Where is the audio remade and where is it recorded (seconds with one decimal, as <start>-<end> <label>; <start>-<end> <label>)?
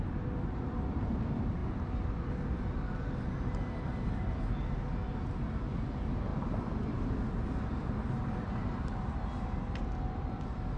0.0-10.8 recorded